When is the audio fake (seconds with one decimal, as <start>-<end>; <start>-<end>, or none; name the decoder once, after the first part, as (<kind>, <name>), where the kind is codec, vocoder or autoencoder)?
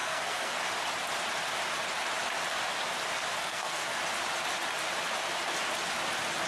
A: 0.0-0.6 (codec, SNAC); 3.4-4.0